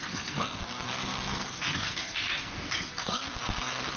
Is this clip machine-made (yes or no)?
yes